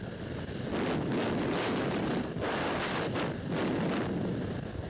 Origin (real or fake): real